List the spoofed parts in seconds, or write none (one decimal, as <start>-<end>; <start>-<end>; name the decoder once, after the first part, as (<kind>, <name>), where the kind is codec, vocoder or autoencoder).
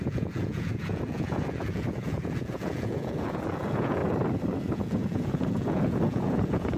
0.0-4.0 (vocoder, Vocos); 4.6-6.8